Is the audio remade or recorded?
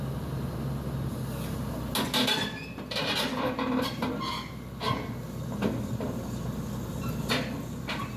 recorded